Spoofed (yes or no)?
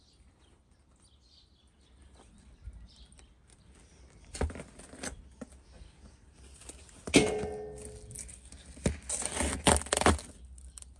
no